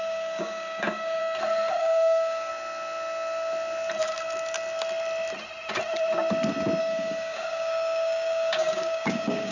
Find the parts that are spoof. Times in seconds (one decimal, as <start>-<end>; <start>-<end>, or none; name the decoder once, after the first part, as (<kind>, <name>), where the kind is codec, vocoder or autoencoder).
0.0-1.2 (codec, DAC); 1.8-2.5; 6.8-9.5